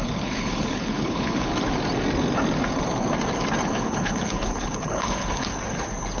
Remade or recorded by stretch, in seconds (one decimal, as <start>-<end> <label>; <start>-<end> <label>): 0.0-1.5 remade; 1.5-3.6 recorded; 3.6-5.5 remade; 5.5-6.2 recorded